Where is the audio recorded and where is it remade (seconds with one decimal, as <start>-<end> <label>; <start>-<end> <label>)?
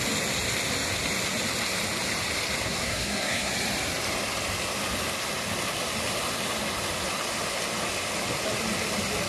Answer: 0.0-2.6 recorded; 2.6-3.5 remade; 3.5-9.3 recorded